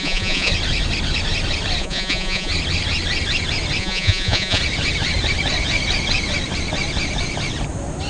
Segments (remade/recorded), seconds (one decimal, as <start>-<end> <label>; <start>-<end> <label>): 0.0-0.5 remade; 0.5-1.8 recorded; 1.8-2.5 remade; 2.5-3.8 recorded; 3.8-4.6 remade; 4.6-8.1 recorded